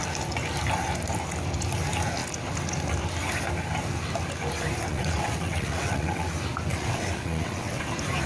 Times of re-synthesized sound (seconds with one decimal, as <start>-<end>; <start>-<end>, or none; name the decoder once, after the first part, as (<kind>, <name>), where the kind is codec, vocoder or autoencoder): 4.9-6.3 (vocoder, WaveNeXt); 6.7-7.8